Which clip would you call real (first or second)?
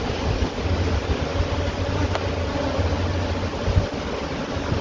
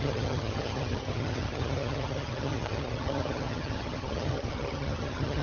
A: first